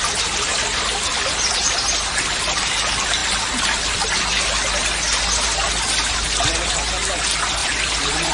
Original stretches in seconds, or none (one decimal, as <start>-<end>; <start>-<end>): 0.0-7.6